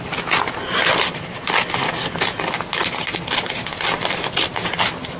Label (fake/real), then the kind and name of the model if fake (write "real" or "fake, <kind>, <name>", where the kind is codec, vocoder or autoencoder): real